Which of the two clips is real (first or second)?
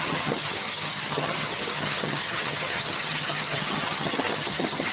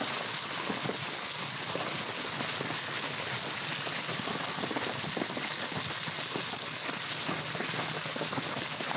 second